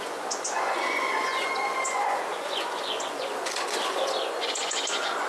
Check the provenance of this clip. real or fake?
fake